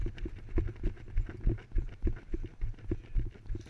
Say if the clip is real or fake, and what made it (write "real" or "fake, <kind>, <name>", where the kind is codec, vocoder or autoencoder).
fake, vocoder, BigVGAN v2